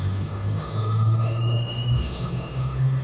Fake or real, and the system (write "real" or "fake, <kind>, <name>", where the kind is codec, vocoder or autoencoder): fake, autoencoder, DAC-VAE